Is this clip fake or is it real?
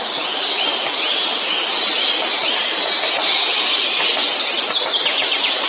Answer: real